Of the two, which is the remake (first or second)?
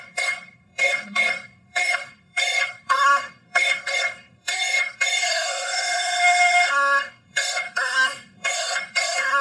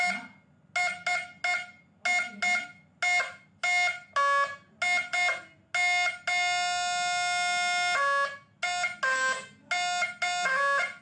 first